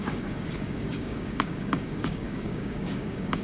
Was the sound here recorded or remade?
remade